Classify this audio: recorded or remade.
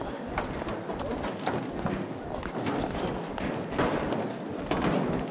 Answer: recorded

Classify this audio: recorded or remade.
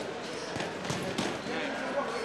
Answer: recorded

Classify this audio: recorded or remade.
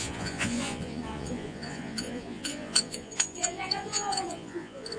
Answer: remade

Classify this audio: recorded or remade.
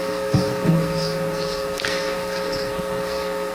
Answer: remade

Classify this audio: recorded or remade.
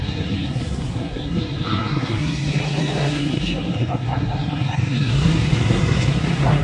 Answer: remade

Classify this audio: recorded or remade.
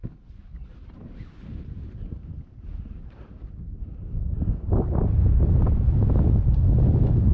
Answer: recorded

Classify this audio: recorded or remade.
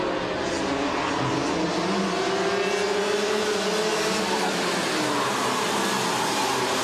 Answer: recorded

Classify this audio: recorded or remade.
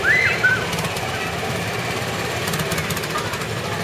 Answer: recorded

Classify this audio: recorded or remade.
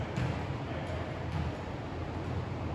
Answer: recorded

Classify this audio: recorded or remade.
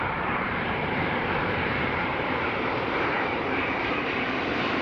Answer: remade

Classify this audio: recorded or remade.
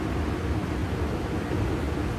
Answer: recorded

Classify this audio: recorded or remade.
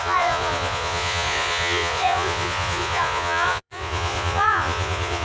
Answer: remade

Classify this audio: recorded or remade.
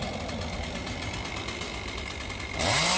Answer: recorded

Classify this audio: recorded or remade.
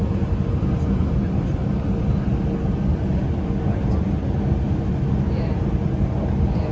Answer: recorded